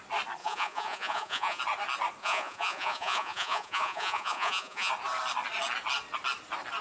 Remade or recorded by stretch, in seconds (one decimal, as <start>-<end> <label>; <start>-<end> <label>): 0.0-0.4 recorded; 0.4-1.6 remade; 1.6-2.2 recorded; 2.2-4.9 remade; 4.9-6.8 recorded